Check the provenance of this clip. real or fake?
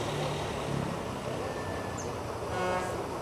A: real